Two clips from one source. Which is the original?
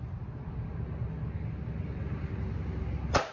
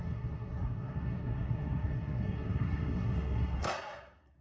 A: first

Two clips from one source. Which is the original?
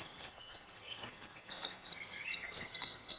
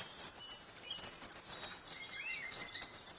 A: second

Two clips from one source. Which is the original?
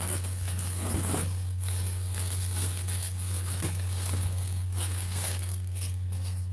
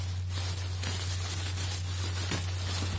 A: second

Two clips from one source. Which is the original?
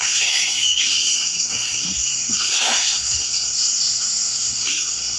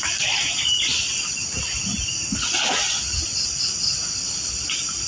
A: second